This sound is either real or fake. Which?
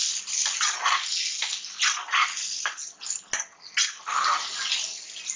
real